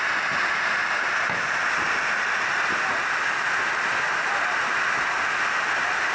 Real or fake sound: real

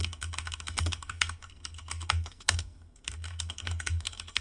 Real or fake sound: fake